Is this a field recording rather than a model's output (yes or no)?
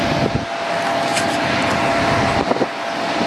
yes